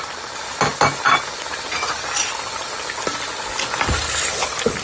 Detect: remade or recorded recorded